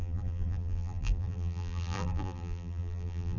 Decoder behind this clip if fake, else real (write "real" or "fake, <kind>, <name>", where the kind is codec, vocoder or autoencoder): fake, vocoder, BigVGAN v2